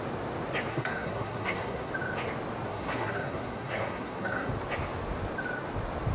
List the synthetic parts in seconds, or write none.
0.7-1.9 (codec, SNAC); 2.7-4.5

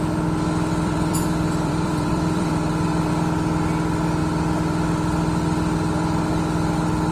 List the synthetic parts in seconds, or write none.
0.7-3.1 (vocoder, BigVGAN v2)

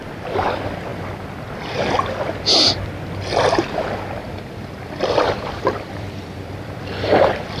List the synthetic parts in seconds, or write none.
4.2-7.6 (vocoder, BigVGAN v2)

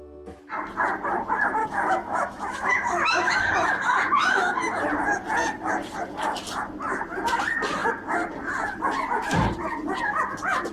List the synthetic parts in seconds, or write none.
1.6-4.8 (autoencoder, DAC-VAE)

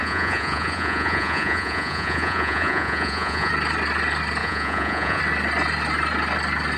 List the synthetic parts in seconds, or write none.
0.0-3.5 (vocoder, Vocos); 4.4-5.2

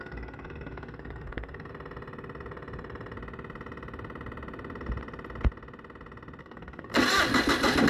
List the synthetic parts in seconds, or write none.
0.0-1.7 (codec, SNAC); 6.4-6.9